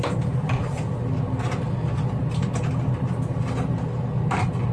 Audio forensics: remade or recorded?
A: recorded